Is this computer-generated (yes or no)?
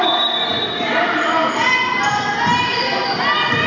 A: no